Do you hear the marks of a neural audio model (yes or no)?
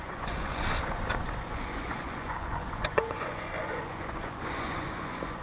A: yes